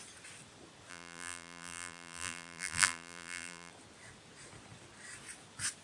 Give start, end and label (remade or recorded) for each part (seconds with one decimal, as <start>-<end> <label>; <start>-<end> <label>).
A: 0.0-0.9 recorded; 0.9-3.7 remade; 3.7-5.8 recorded